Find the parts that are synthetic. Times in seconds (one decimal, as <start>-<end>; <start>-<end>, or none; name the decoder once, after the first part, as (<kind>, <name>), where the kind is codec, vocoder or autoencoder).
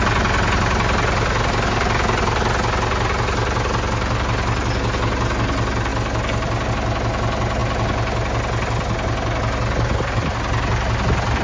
none